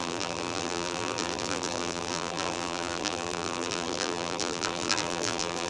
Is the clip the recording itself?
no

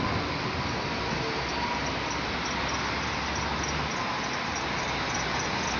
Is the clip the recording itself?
yes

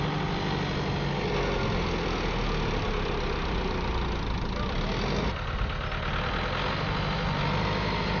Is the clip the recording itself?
yes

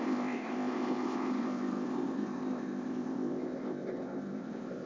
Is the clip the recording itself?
no